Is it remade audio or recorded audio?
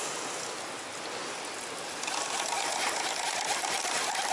recorded